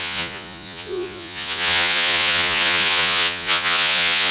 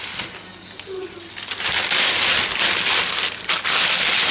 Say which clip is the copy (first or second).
first